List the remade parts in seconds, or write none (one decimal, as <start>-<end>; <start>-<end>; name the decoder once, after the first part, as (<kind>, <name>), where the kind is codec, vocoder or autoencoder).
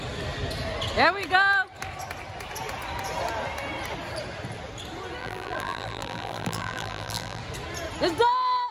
5.2-7.4 (vocoder, BigVGAN v2)